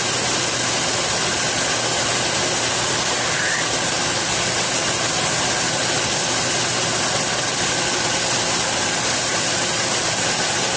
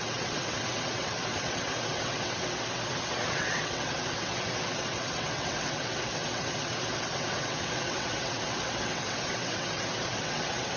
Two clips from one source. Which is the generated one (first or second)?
second